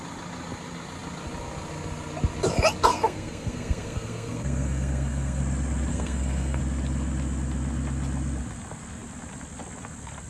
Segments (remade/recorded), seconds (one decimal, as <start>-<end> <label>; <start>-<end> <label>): 0.0-2.9 recorded; 2.9-5.4 remade; 5.4-5.9 recorded; 5.9-6.6 remade; 6.6-10.3 recorded